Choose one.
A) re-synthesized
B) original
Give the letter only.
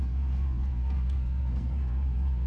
A